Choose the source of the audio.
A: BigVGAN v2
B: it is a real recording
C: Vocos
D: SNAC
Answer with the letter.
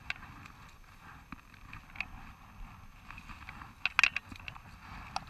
B